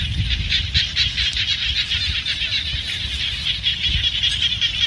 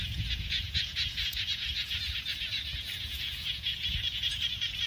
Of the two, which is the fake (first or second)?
second